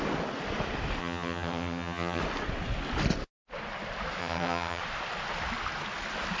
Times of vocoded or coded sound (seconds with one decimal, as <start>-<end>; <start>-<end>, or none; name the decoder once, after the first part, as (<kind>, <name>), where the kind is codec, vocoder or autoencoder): 1.0-2.2 (vocoder, HiFi-GAN); 4.2-4.8